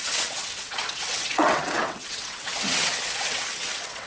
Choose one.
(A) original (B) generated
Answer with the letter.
B